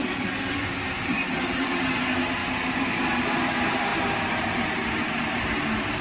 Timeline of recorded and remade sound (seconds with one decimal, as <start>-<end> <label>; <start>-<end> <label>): 0.0-6.0 recorded